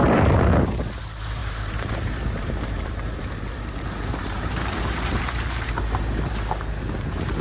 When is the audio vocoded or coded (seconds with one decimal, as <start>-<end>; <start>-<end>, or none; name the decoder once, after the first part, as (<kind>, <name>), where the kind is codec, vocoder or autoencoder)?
1.4-5.7 (vocoder, BigVGAN v2)